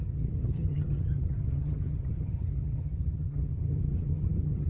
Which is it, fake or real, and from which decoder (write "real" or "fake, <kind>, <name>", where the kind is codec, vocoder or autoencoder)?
fake, vocoder, HiFi-GAN